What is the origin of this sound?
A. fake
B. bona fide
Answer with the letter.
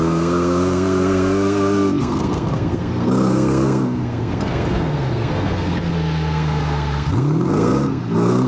A